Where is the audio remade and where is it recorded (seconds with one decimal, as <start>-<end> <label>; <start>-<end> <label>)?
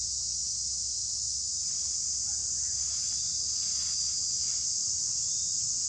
0.0-2.4 recorded; 2.4-2.9 remade; 2.9-4.8 recorded; 4.8-5.5 remade; 5.5-5.9 recorded